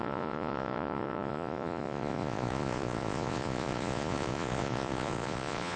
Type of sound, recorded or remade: remade